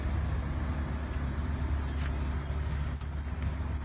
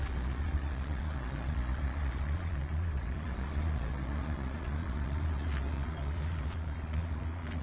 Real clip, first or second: first